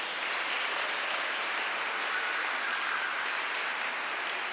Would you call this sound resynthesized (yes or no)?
no